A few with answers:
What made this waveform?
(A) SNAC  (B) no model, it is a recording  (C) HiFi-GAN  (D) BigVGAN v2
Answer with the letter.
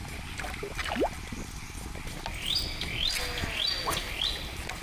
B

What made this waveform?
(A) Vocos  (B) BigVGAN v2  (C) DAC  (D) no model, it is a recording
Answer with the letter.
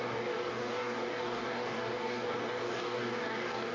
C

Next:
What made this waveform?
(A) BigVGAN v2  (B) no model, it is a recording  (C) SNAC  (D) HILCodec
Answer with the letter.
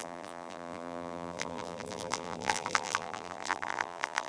A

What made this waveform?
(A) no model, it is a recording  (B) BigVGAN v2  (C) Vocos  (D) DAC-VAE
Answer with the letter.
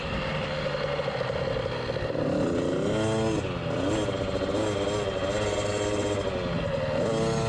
A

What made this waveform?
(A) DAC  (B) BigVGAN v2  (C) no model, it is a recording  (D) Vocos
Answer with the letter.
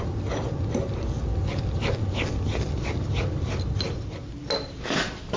C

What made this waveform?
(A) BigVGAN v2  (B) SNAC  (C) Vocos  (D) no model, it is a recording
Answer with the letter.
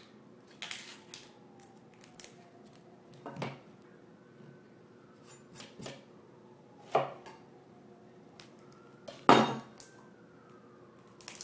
D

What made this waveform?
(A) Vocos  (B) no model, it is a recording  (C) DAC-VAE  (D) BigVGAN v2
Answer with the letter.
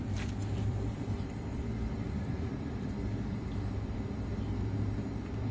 D